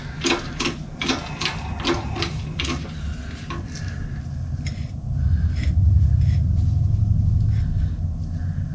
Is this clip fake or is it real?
real